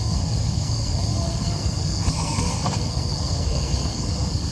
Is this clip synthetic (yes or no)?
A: yes